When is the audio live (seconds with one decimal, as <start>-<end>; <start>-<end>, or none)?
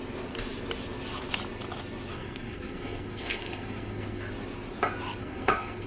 0.0-2.1; 4.2-5.2